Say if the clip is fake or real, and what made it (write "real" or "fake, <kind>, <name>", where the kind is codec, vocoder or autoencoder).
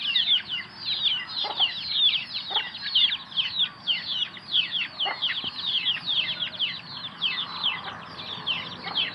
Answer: real